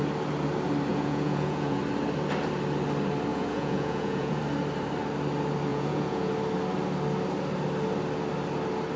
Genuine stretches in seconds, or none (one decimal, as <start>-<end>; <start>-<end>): 0.0-0.9; 1.8-3.3; 4.4-5.7; 6.3-9.0